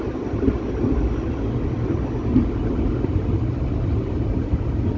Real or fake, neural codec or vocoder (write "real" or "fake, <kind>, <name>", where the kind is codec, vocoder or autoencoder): real